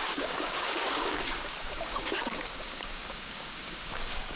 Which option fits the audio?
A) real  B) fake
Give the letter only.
B